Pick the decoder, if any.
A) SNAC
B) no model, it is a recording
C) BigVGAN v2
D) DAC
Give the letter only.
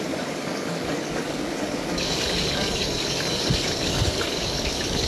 D